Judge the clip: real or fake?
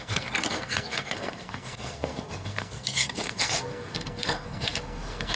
fake